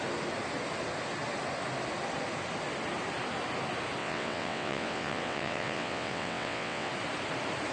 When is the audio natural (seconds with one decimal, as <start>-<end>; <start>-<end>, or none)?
0.0-4.0; 6.9-7.7